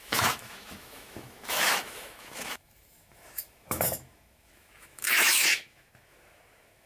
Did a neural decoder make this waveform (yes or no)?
yes